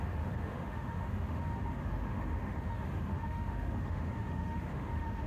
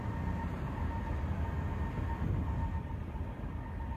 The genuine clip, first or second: second